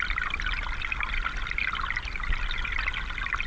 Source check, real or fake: real